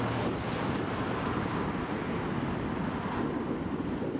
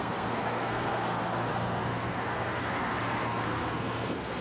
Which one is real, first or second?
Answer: first